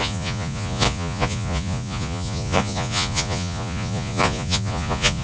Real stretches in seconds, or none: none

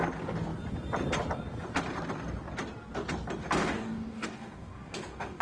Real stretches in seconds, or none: 0.0-3.6

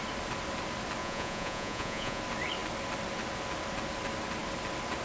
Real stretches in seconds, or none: 0.0-1.0; 2.2-5.0

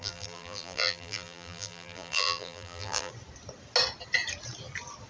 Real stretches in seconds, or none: 3.1-5.1